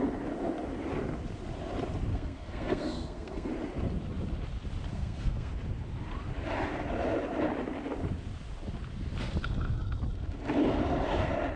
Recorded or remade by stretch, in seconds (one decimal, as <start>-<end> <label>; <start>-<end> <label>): 0.0-2.1 recorded; 2.1-3.5 remade; 3.5-4.9 recorded; 4.9-5.5 remade; 5.5-11.6 recorded